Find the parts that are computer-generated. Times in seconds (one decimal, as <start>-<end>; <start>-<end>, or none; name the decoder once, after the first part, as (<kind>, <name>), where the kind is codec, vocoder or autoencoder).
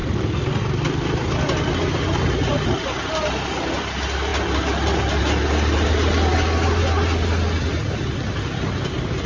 none